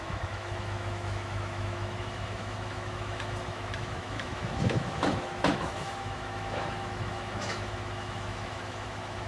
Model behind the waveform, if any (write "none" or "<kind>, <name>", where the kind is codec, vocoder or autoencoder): autoencoder, DAC-VAE